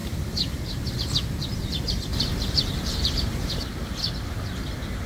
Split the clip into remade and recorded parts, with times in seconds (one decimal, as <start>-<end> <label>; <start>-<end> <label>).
0.0-1.7 remade; 1.7-2.1 recorded; 2.1-4.0 remade; 4.0-5.1 recorded